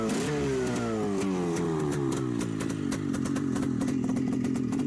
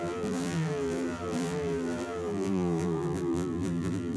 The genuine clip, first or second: first